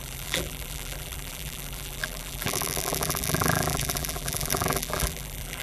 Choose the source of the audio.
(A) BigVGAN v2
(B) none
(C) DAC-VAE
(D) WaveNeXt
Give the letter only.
A